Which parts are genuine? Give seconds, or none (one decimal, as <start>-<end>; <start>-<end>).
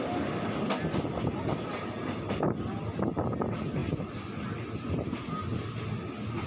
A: 0.0-6.5